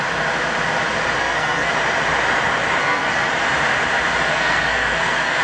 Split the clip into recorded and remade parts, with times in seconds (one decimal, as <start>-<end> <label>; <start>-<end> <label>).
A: 0.0-1.2 recorded; 1.2-1.7 remade; 1.7-2.8 recorded; 2.8-3.3 remade; 3.3-4.3 recorded; 4.3-5.4 remade